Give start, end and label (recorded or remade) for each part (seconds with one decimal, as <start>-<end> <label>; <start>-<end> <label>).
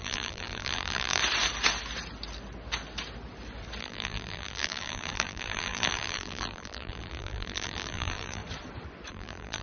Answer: 0.0-1.2 remade; 1.2-3.8 recorded; 3.8-8.4 remade; 8.4-9.1 recorded; 9.1-9.6 remade